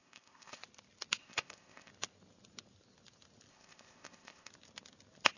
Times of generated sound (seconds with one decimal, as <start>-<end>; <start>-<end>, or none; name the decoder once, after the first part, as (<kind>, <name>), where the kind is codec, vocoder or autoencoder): 0.0-0.6 (codec, ZipCodec); 1.2-1.9; 3.5-4.5